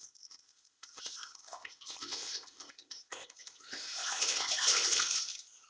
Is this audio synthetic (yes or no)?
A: yes